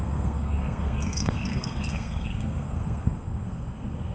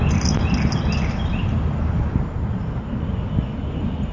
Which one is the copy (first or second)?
first